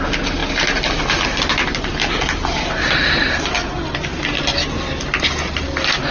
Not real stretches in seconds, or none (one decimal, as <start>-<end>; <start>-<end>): none

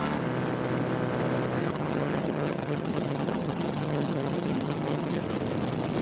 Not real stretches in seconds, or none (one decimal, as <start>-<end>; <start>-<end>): 1.6-5.2